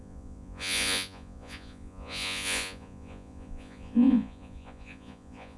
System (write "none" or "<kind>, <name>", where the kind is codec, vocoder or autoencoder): vocoder, Vocos